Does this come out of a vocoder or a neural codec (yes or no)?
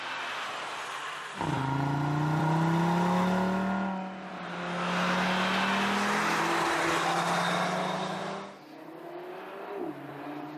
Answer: no